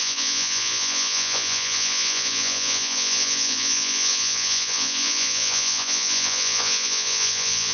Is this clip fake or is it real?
fake